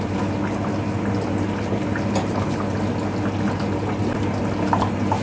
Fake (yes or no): no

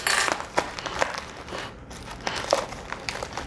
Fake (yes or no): no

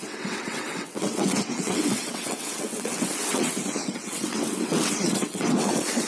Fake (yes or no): yes